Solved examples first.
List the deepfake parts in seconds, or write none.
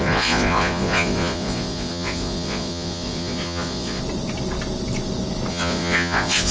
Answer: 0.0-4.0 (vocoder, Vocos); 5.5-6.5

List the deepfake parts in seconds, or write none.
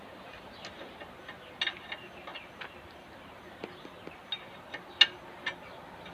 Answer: none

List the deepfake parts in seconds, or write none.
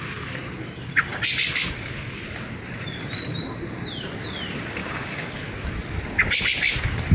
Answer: 4.8-5.4 (codec, DAC)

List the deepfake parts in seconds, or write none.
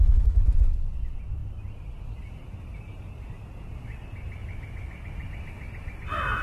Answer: none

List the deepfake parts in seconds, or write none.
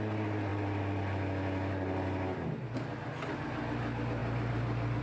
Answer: none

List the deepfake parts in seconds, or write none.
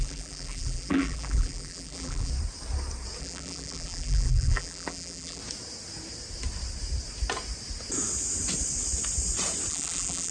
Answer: 0.0-2.3 (vocoder, BigVGAN v2); 3.2-5.4; 9.7-10.3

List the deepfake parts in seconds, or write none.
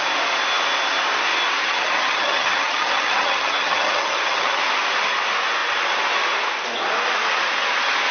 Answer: 1.6-4.6 (vocoder, HiFi-GAN)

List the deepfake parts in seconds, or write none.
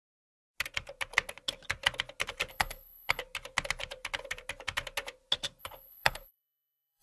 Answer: 2.5-3.2 (codec, HILCodec); 5.6-7.0